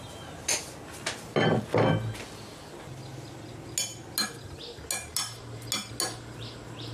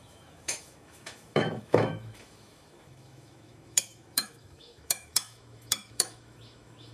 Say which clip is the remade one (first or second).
second